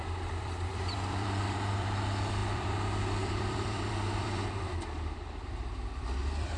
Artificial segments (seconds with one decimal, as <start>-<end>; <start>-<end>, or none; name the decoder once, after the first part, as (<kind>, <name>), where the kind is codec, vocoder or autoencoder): 0.0-6.6 (vocoder, BigVGAN v2)